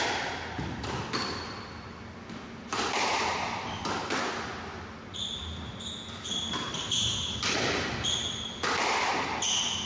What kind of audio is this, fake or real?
real